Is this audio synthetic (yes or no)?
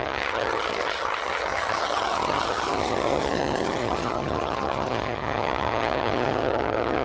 yes